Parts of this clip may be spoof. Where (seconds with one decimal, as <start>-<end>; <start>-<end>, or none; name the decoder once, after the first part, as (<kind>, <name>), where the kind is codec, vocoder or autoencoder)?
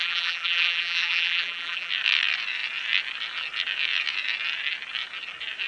0.0-1.9 (vocoder, BigVGAN v2)